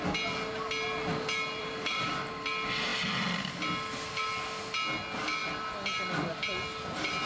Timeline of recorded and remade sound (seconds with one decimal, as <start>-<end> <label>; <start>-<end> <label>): 0.0-1.6 recorded; 1.6-2.1 remade; 2.1-7.3 recorded